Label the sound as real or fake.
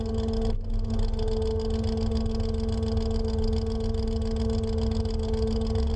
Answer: real